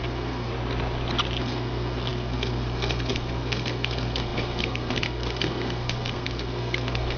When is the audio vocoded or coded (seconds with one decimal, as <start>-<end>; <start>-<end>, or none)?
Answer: 0.0-0.5; 1.4-7.2